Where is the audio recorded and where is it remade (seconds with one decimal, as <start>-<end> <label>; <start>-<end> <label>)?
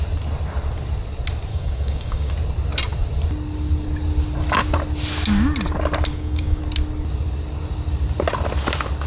0.0-1.5 recorded; 1.5-2.3 remade; 2.3-6.1 recorded; 6.1-6.6 remade; 6.6-9.1 recorded